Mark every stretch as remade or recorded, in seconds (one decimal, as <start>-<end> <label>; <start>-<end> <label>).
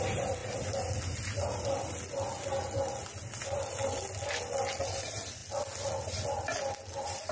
0.0-7.3 recorded